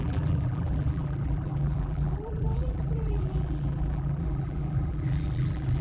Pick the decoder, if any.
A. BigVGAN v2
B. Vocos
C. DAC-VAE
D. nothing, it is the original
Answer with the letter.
A